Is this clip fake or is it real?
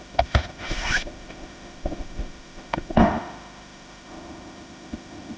fake